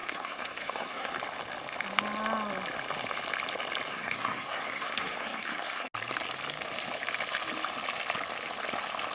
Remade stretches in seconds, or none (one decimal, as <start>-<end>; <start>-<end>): 0.0-1.2; 3.9-5.9